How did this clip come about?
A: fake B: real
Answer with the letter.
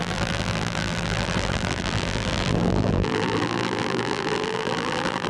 A